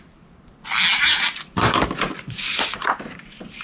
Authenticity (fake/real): real